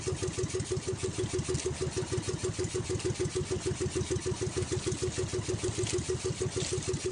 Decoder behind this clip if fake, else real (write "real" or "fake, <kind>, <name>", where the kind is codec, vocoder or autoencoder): real